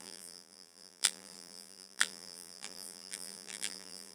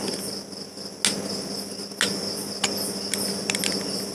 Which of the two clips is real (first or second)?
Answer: second